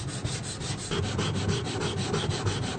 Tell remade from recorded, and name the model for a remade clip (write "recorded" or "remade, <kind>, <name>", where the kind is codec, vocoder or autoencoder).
recorded